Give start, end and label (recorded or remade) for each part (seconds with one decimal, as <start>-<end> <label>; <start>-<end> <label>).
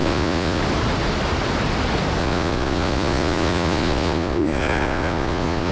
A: 0.0-0.6 remade; 0.6-2.2 recorded; 2.2-5.7 remade